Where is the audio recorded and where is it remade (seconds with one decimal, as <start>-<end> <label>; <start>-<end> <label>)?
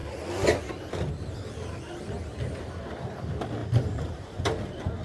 0.0-3.6 recorded; 3.6-4.4 remade; 4.4-5.0 recorded